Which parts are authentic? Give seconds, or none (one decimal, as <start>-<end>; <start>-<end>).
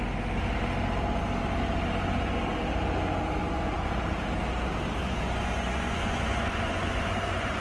0.0-3.4; 3.9-5.0